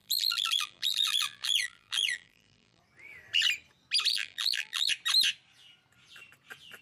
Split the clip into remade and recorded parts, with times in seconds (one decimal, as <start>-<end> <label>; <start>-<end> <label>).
0.0-2.8 remade; 2.8-4.1 recorded; 4.1-4.9 remade; 4.9-6.8 recorded

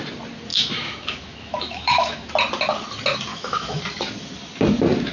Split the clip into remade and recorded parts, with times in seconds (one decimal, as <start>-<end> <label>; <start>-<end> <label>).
0.0-0.5 recorded; 0.5-2.3 remade; 2.3-3.3 recorded; 3.3-3.8 remade; 3.8-5.1 recorded

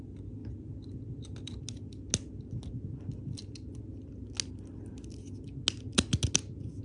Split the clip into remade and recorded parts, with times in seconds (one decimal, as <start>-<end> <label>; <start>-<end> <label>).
0.0-6.8 recorded